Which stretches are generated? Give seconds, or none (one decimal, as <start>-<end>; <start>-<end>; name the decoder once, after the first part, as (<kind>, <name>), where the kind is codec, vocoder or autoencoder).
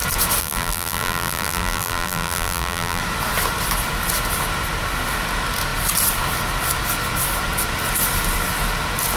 0.4-3.0 (vocoder, BigVGAN v2)